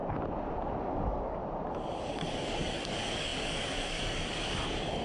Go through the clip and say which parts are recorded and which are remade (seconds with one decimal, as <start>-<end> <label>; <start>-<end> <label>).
0.0-0.8 recorded; 0.8-1.4 remade; 1.4-2.0 recorded; 2.0-5.0 remade